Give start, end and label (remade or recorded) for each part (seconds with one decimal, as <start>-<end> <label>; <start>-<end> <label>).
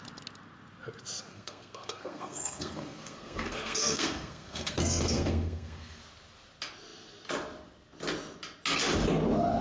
0.0-1.3 recorded; 1.3-6.0 remade; 6.0-9.6 recorded